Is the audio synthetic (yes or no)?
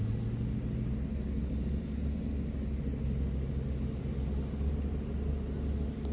no